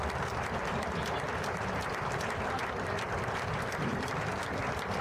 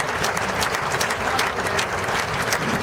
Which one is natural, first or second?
second